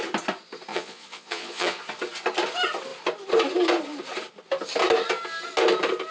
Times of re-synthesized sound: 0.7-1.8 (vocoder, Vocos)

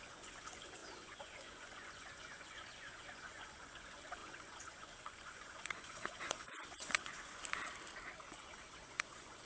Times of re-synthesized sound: 0.0-7.4 (vocoder, Vocos); 8.3-9.5

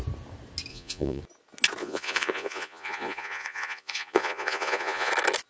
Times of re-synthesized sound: 0.7-1.2 (vocoder, Vocos); 1.8-5.1

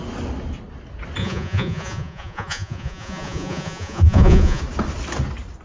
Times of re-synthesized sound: 1.2-4.6 (vocoder, Vocos)

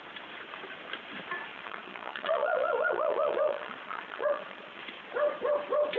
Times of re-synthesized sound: 1.5-4.8 (vocoder, Vocos)